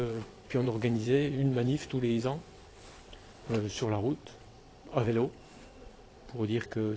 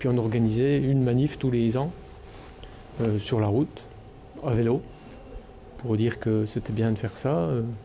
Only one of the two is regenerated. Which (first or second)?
first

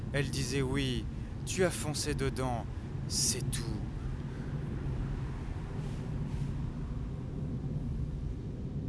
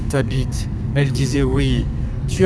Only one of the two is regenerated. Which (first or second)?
second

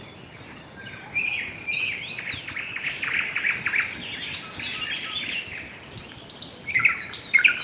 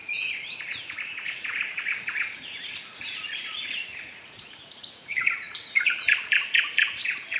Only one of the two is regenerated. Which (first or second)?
second